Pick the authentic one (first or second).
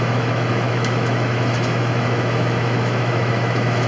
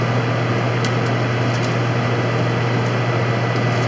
second